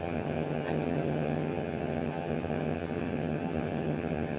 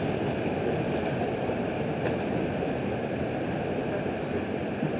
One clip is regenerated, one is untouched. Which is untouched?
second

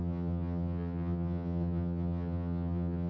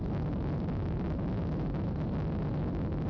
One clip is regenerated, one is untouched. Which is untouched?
second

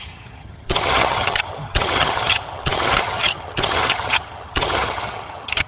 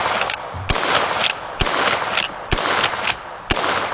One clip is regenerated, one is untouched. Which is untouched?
second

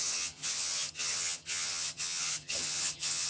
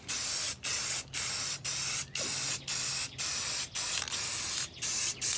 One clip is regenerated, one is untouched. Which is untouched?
second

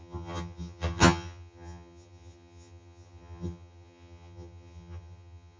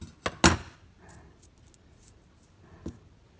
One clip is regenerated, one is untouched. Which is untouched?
second